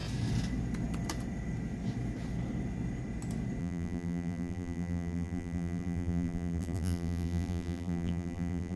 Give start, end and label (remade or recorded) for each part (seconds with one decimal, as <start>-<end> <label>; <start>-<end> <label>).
0.0-3.6 recorded; 3.6-8.8 remade